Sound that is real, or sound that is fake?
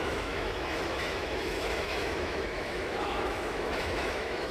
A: fake